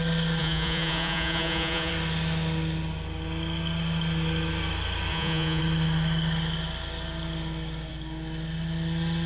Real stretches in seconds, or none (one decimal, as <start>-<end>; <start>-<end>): 0.0-0.4; 1.9-5.1; 5.6-9.3